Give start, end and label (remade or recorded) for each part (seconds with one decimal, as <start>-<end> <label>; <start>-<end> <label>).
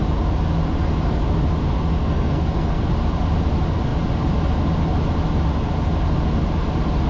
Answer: 0.0-2.0 recorded; 2.0-2.9 remade; 2.9-7.1 recorded